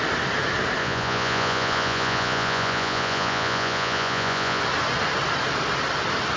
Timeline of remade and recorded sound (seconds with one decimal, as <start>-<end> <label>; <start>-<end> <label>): 0.0-0.8 recorded; 0.8-4.6 remade; 4.6-6.4 recorded